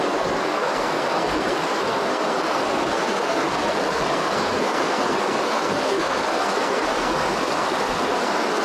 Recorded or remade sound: remade